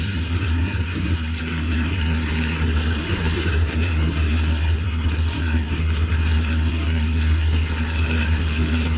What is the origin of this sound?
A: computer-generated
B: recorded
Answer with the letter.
A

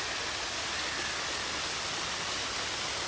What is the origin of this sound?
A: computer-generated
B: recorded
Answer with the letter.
B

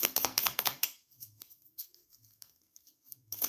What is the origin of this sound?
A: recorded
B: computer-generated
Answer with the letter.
B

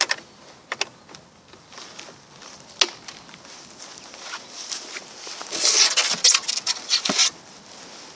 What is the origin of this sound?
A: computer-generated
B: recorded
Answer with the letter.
B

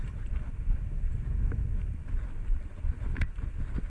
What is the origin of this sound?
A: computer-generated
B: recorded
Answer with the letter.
B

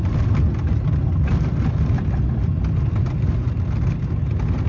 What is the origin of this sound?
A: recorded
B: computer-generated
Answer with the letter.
A